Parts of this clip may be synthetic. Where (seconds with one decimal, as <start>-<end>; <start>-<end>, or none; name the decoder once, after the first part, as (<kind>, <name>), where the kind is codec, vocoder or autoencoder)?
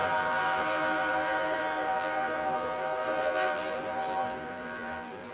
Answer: 0.0-5.3 (vocoder, BigVGAN v2)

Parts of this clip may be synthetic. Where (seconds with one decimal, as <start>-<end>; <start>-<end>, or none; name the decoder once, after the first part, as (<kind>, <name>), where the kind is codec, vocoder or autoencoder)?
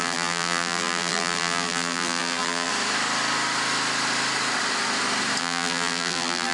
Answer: 0.0-2.7 (vocoder, BigVGAN v2); 5.4-6.5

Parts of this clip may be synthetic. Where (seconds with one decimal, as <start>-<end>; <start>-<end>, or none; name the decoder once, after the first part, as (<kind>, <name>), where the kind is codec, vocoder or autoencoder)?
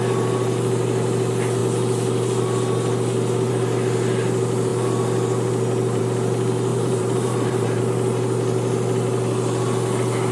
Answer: 6.7-7.8 (vocoder, BigVGAN v2)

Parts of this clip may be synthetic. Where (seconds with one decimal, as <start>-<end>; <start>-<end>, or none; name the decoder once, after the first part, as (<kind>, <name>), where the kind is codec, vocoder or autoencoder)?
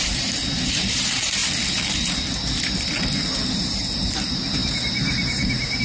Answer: 0.0-1.4 (vocoder, BigVGAN v2); 3.5-5.8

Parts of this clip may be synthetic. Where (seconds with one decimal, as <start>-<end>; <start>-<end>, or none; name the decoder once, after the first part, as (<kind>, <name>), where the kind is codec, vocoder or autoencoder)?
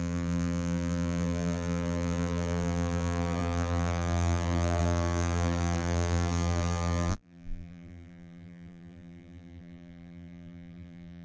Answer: 0.0-11.2 (vocoder, BigVGAN v2)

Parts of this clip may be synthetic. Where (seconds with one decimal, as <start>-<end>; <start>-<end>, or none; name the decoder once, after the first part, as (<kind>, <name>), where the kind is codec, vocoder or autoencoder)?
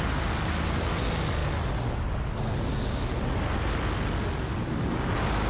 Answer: none